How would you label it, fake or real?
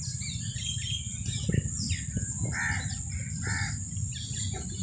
real